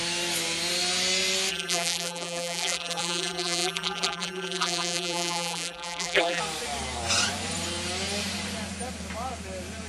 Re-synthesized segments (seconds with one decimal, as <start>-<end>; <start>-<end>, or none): 1.5-6.4